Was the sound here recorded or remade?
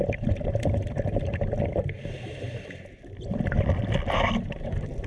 recorded